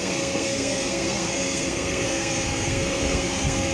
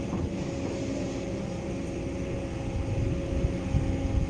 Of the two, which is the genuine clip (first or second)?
second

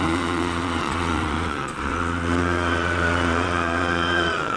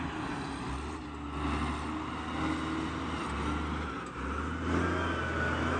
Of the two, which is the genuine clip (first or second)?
second